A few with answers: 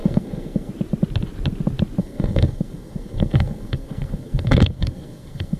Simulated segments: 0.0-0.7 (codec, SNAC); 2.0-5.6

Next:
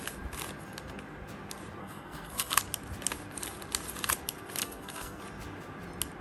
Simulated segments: 1.8-2.6 (codec, SNAC); 4.6-5.2